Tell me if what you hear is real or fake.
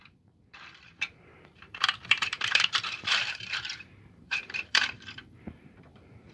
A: fake